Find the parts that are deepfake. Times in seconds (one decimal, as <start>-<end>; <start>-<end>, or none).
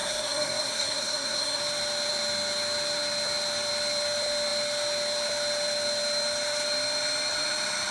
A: 0.0-1.6